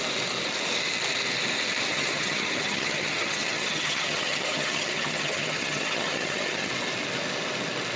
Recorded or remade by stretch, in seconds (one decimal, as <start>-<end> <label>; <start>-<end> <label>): 0.0-1.9 recorded; 1.9-6.7 remade; 6.7-8.0 recorded